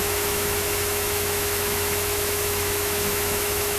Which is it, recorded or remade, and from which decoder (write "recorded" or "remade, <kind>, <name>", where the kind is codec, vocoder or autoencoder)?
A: remade, autoencoder, DAC-VAE